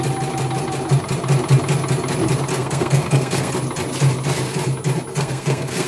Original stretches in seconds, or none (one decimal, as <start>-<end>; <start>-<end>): 0.0-2.5; 3.5-5.1